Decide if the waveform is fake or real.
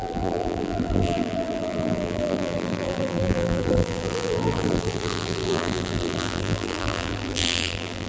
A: fake